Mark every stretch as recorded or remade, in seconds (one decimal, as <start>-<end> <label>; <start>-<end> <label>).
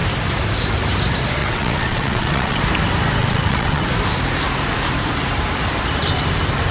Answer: 0.0-1.4 recorded; 1.4-2.6 remade; 2.6-3.2 recorded; 3.2-3.8 remade; 3.8-6.7 recorded